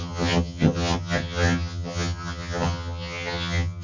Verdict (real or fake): fake